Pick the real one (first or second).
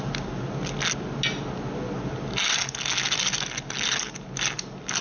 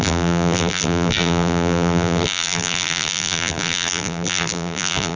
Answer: first